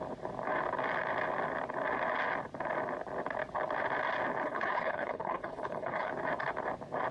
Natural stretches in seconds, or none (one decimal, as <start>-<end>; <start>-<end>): 0.0-4.4; 6.1-7.1